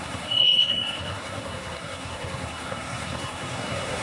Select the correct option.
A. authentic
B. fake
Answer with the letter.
B